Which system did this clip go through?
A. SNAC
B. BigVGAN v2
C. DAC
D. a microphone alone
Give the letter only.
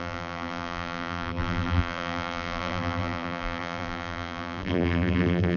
B